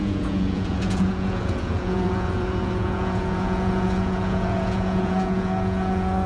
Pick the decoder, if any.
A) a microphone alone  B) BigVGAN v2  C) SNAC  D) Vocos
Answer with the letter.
D